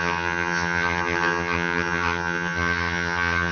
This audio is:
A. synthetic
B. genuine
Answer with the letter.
A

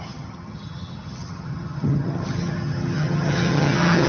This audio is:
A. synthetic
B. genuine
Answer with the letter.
A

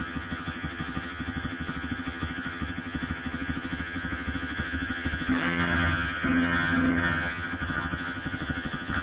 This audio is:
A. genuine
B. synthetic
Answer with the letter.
B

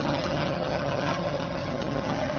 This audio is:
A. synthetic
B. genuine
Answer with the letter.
A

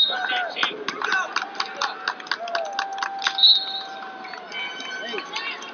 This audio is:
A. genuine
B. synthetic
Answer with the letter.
A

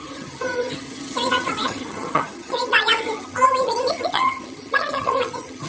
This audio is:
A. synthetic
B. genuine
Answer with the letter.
A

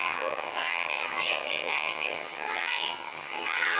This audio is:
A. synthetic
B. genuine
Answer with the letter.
A